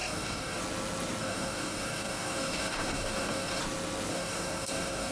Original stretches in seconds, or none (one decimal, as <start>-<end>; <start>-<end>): 0.6-1.2; 3.6-4.1